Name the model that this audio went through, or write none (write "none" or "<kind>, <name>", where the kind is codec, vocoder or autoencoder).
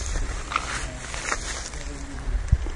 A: none